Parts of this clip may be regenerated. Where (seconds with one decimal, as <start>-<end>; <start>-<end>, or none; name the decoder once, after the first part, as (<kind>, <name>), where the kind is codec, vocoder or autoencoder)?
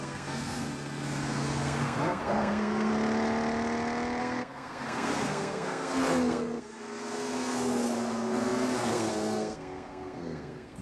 0.0-2.9 (codec, SNAC); 4.2-10.8